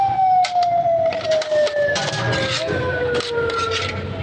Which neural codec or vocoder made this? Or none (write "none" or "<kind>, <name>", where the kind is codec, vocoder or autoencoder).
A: none